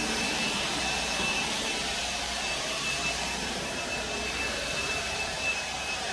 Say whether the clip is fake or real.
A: fake